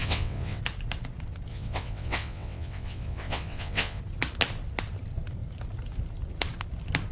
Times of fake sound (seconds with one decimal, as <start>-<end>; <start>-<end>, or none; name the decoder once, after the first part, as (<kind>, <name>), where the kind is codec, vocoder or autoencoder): 0.0-0.6 (vocoder, WaveNeXt); 1.5-4.0